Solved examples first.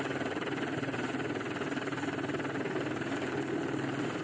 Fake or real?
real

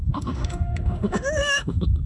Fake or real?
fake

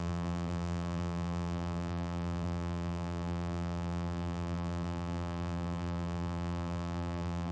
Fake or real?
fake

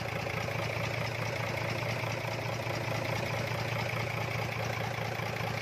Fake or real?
real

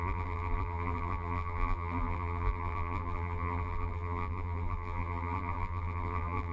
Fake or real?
fake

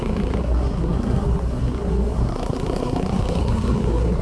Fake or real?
fake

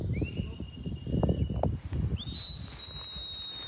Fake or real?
real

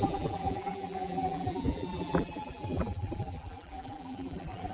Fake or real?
fake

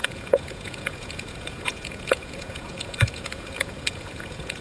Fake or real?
fake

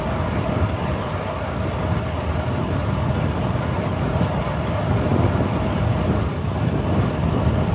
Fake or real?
real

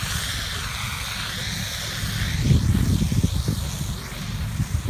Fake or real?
real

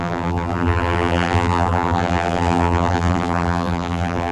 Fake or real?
fake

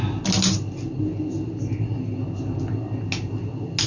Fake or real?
real